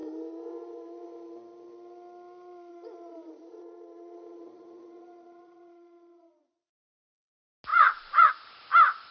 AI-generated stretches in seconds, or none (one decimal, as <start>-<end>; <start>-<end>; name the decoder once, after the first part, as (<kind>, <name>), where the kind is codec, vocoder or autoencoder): 2.7-7.3 (vocoder, Vocos); 7.7-8.3